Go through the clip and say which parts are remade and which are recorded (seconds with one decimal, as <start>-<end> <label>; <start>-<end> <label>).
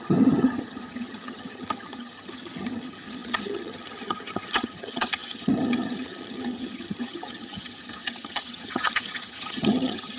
0.0-10.2 remade